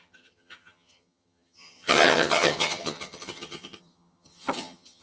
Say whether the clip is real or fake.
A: fake